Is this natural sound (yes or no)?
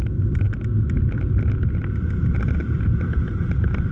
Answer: yes